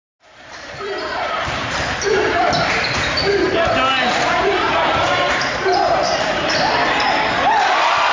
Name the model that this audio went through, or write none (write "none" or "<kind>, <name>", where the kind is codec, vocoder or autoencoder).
vocoder, BigVGAN v2